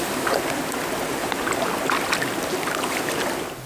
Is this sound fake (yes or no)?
no